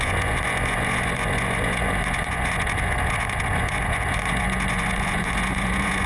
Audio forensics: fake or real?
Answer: fake